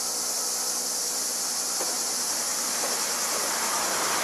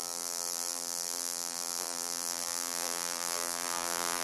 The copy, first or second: second